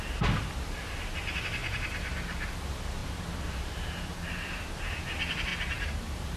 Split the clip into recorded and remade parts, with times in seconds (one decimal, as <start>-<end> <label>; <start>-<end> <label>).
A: 0.0-1.6 recorded; 1.6-2.5 remade; 2.5-3.0 recorded; 3.0-4.9 remade; 4.9-5.5 recorded; 5.5-6.4 remade

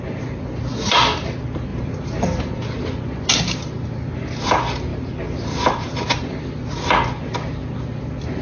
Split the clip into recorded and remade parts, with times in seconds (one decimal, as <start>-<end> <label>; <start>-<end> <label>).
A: 0.0-1.7 recorded; 1.7-2.4 remade; 2.4-4.9 recorded; 4.9-6.1 remade; 6.1-8.4 recorded

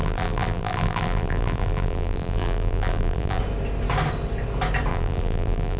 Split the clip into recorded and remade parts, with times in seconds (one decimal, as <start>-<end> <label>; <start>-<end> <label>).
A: 0.0-3.4 remade; 3.4-4.9 recorded; 4.9-5.8 remade

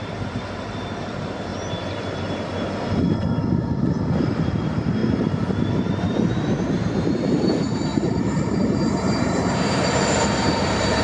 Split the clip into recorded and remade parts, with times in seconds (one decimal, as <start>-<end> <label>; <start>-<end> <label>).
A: 0.0-1.5 remade; 1.5-4.2 recorded; 4.2-11.0 remade

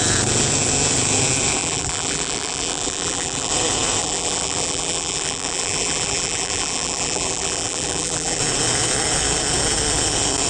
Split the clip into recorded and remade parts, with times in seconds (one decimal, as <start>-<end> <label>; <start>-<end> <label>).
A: 0.0-1.6 recorded; 1.6-3.5 remade; 3.5-4.0 recorded; 4.0-8.4 remade; 8.4-10.5 recorded

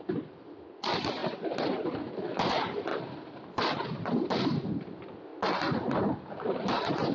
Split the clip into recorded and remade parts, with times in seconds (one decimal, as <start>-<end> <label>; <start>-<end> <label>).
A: 0.0-1.2 remade; 1.2-2.5 recorded; 2.5-5.3 remade; 5.3-6.3 recorded; 6.3-7.1 remade

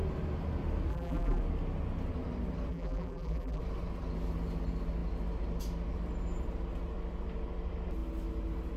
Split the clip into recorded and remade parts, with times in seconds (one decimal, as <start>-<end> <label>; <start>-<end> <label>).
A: 0.0-0.9 recorded; 0.9-1.4 remade; 1.4-2.7 recorded; 2.7-3.6 remade; 3.6-8.8 recorded